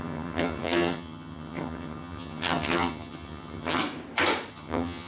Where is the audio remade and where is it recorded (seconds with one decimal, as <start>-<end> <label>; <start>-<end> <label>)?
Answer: 0.0-3.8 remade; 3.8-4.5 recorded; 4.5-5.1 remade